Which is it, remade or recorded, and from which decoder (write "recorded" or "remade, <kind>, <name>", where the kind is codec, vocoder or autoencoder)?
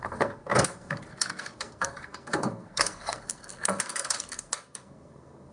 remade, codec, SNAC